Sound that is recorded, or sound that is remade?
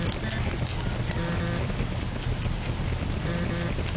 recorded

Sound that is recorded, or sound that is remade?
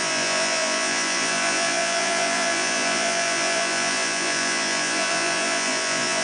remade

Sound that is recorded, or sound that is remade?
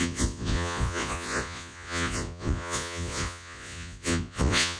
remade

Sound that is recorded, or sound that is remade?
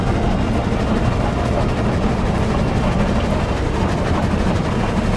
recorded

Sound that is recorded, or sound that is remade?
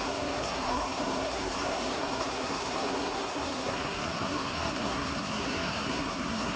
remade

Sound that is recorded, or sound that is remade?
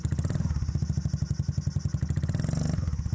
recorded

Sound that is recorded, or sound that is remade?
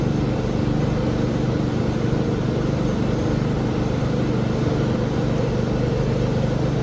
recorded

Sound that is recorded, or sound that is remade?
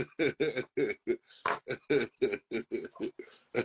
recorded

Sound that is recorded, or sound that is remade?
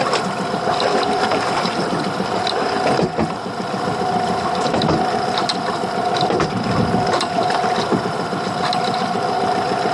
recorded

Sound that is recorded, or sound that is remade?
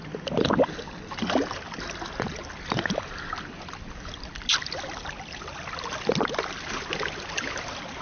recorded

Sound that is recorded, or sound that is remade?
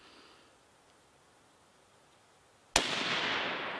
recorded